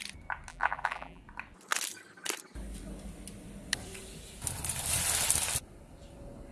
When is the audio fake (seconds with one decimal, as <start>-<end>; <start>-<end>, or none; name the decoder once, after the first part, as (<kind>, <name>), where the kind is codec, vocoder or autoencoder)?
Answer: 0.5-1.2 (vocoder, BigVGAN v2)